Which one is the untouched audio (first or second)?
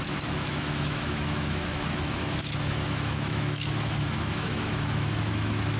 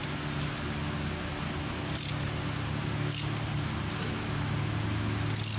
second